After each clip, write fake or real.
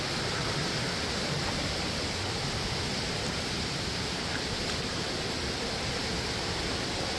real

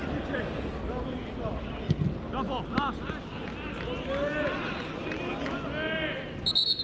real